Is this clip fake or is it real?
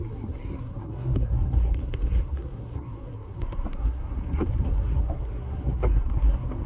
fake